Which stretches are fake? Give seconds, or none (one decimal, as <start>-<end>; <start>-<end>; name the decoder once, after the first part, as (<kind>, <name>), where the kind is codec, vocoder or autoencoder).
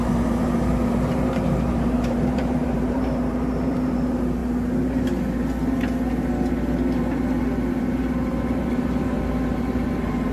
0.0-4.4 (vocoder, BigVGAN v2); 7.7-10.3